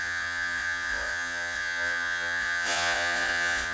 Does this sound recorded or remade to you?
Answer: remade